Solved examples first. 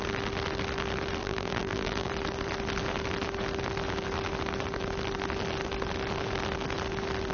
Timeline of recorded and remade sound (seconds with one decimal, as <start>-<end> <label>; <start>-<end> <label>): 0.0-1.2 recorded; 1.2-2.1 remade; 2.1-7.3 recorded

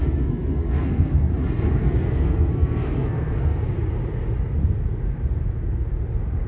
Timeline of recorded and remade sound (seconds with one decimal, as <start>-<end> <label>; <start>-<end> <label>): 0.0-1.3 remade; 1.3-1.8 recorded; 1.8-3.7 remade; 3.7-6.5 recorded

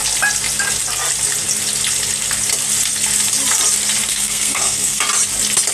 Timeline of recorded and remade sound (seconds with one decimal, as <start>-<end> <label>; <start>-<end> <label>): 0.0-4.1 recorded; 4.1-5.0 remade; 5.0-5.7 recorded

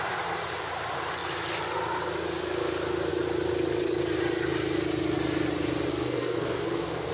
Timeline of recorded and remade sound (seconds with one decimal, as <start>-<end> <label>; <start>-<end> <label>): 0.0-5.9 recorded; 5.9-7.1 remade

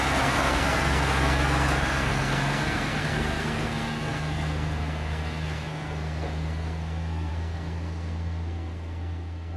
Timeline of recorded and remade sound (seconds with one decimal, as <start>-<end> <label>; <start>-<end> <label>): 0.0-9.6 remade